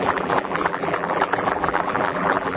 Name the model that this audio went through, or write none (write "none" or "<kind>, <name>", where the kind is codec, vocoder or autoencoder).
vocoder, BigVGAN v2